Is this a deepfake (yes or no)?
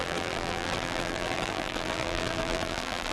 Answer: yes